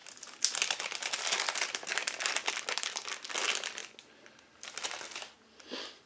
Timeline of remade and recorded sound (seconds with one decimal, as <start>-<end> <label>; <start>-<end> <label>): 0.0-6.1 recorded

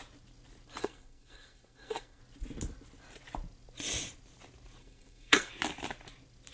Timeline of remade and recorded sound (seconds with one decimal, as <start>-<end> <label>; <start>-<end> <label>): 0.0-0.8 recorded; 0.8-2.2 remade; 2.2-4.8 recorded; 4.8-5.5 remade; 5.5-6.5 recorded

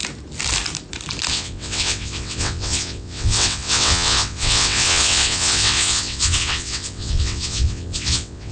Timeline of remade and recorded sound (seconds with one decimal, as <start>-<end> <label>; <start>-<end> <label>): 0.0-1.3 recorded; 1.3-8.5 remade

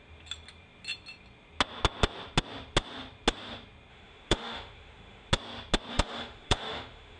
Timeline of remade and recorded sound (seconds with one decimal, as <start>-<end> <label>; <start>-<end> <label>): 0.0-3.9 recorded; 3.9-5.3 remade; 5.3-5.9 recorded; 5.9-7.2 remade

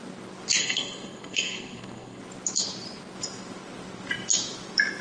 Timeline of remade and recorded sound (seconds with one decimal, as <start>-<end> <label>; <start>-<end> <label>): 0.0-0.6 recorded; 0.6-2.2 remade; 2.2-5.0 recorded